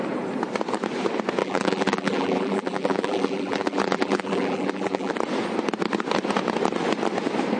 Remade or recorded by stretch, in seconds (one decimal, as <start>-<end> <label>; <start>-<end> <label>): 0.0-1.4 recorded; 1.4-5.1 remade; 5.1-7.6 recorded